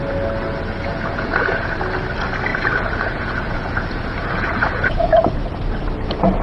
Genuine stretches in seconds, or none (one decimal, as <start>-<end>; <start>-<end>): 0.0-0.9; 1.8-2.5; 5.2-6.4